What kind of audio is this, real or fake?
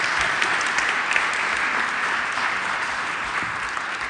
real